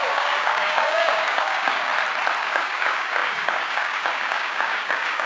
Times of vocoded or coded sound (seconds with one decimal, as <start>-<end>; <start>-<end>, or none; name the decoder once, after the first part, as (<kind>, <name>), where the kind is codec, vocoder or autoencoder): 0.0-1.9 (codec, DAC); 2.4-5.3